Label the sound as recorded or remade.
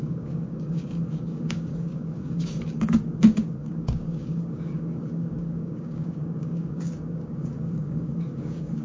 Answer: remade